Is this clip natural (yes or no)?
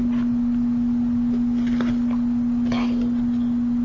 yes